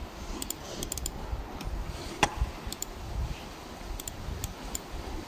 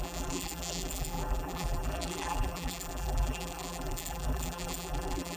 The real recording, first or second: first